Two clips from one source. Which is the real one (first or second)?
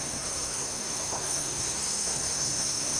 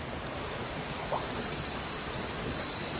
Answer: second